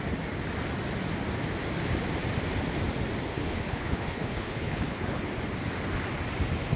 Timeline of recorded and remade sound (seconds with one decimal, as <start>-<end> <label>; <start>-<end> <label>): 0.0-3.3 recorded; 3.3-5.2 remade; 5.2-6.8 recorded